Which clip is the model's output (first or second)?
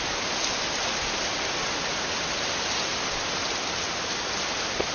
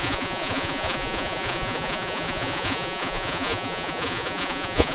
second